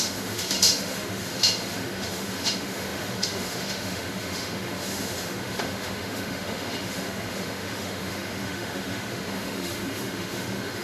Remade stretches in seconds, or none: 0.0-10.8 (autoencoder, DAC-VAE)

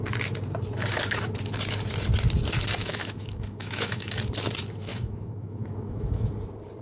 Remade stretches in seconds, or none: 2.8-4.2 (autoencoder, DAC-VAE); 4.9-6.3

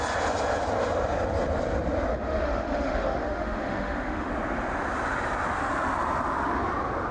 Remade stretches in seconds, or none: 2.1-4.3 (autoencoder, DAC-VAE)

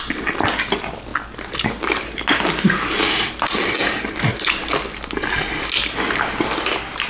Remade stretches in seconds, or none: none

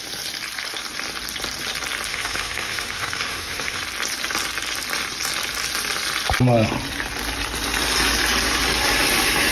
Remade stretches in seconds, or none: 2.1-3.8 (autoencoder, DAC-VAE)

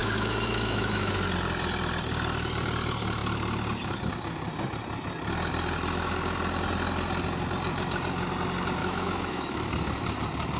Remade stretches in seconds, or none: 0.0-1.1 (autoencoder, DAC-VAE); 8.8-9.7

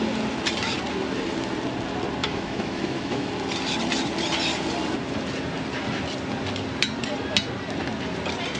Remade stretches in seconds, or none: 2.2-3.3 (autoencoder, DAC-VAE)